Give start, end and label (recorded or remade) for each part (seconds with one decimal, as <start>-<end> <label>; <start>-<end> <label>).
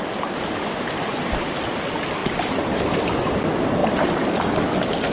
0.0-2.2 recorded; 2.2-3.2 remade; 3.2-3.8 recorded; 3.8-4.6 remade; 4.6-5.1 recorded